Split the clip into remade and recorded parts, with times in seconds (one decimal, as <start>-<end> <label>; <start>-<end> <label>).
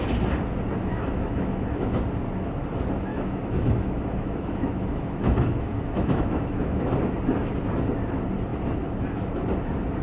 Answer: 0.0-0.9 recorded; 0.9-2.0 remade; 2.0-3.1 recorded; 3.1-6.8 remade; 6.8-10.0 recorded